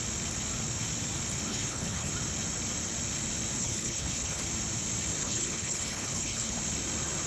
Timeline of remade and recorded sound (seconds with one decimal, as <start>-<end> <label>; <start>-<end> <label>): 0.0-1.5 recorded; 1.5-2.1 remade; 2.1-3.6 recorded; 3.6-4.4 remade; 4.4-5.2 recorded; 5.2-6.6 remade; 6.6-7.3 recorded